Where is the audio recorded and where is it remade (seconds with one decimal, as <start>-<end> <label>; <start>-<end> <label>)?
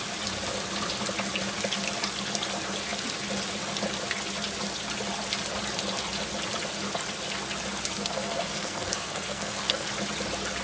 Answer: 0.0-7.9 recorded; 7.9-9.9 remade; 9.9-10.6 recorded